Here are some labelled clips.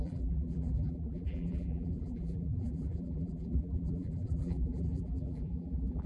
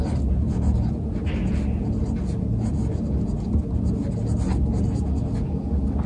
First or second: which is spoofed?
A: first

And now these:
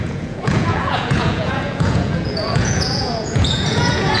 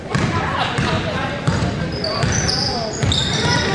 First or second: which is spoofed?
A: first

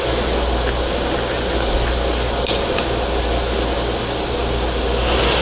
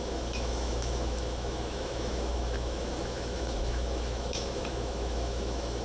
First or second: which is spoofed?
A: second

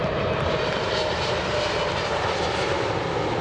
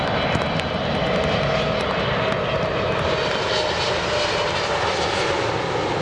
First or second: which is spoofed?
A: first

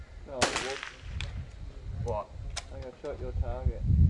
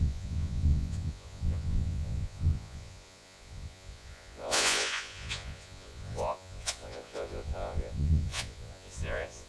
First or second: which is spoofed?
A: second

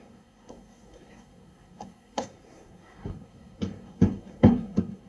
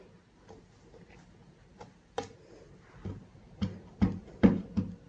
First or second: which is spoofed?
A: first